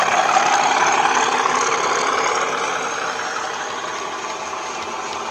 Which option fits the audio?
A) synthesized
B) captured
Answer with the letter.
B